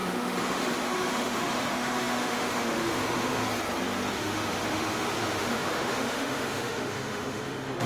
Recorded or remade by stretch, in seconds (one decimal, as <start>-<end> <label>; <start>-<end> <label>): 0.0-3.4 remade; 3.4-4.1 recorded; 4.1-7.9 remade